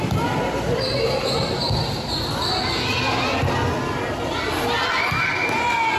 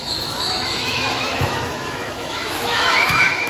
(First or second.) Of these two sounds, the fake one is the second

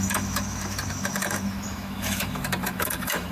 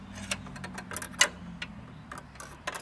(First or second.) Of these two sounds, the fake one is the first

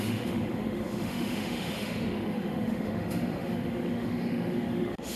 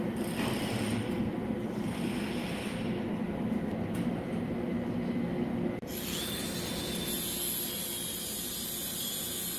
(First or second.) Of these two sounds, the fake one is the first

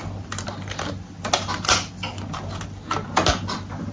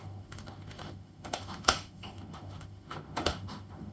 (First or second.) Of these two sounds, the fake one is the second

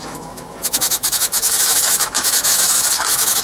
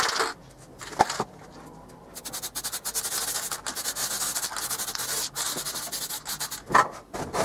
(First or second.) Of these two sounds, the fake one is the first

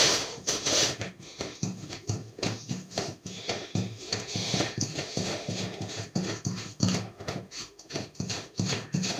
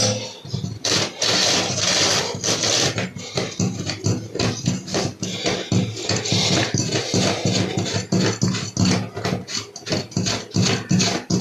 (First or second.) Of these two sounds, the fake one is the first